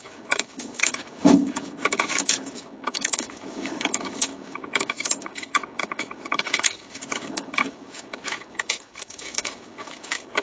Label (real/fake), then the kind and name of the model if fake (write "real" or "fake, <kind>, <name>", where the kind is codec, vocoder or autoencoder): fake, codec, DAC